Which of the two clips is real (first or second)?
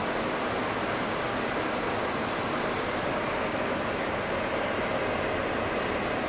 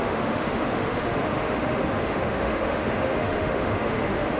first